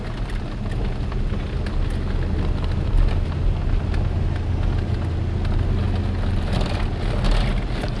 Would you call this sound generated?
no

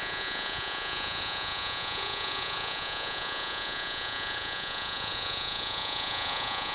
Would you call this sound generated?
yes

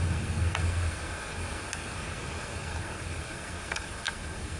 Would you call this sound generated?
yes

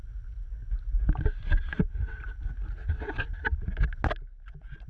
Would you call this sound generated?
no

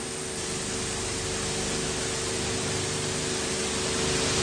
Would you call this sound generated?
no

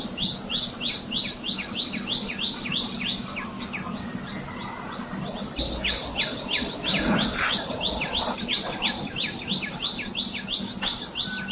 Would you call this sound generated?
no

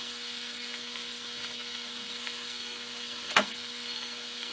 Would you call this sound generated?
yes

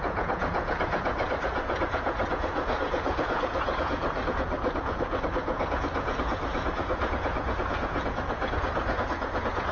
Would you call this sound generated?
yes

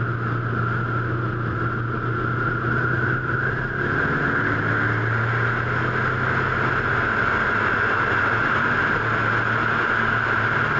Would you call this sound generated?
no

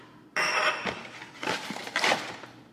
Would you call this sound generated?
no